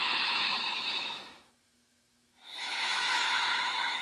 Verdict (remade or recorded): remade